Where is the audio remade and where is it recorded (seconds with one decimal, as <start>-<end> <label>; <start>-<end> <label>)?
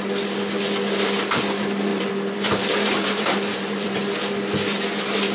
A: 0.0-1.9 recorded; 1.9-4.0 remade; 4.0-5.3 recorded